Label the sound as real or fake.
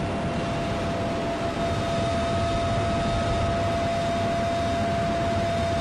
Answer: real